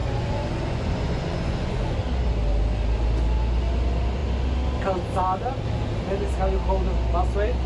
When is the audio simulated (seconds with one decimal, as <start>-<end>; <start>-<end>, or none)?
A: 0.0-1.9